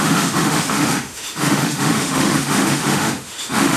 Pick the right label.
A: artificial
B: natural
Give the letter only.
A